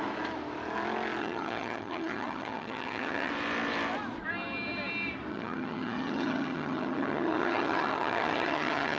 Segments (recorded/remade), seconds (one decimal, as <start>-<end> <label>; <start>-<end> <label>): 0.0-1.2 recorded; 1.2-3.3 remade; 3.3-5.3 recorded; 5.3-9.0 remade